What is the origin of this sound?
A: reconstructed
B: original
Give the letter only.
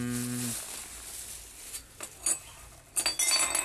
B